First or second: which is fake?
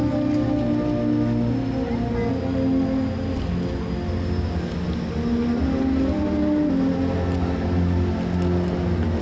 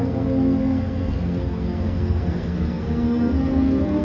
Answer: second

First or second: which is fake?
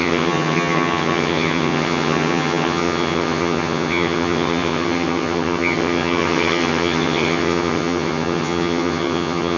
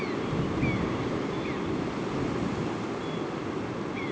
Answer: first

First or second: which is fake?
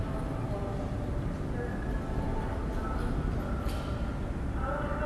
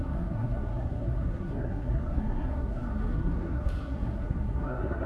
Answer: second